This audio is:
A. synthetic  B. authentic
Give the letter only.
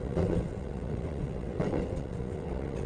A